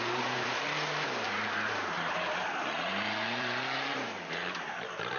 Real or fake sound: fake